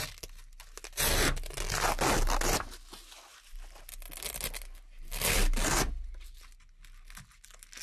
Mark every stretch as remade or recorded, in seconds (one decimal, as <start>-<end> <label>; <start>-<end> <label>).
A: 0.0-7.8 recorded